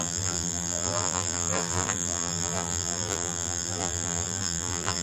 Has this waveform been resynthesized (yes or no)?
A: yes